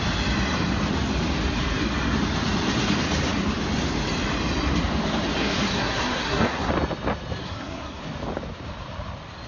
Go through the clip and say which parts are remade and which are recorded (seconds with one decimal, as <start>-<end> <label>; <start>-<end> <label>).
0.0-5.4 recorded; 5.4-6.7 remade; 6.7-7.4 recorded; 7.4-8.0 remade; 8.0-9.5 recorded

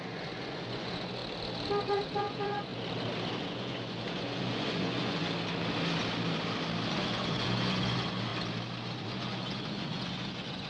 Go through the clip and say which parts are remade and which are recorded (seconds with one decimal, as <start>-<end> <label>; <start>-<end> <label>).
0.0-1.2 remade; 1.2-1.8 recorded; 1.8-2.7 remade; 2.7-3.4 recorded; 3.4-5.2 remade; 5.2-6.9 recorded; 6.9-8.3 remade; 8.3-9.0 recorded; 9.0-10.7 remade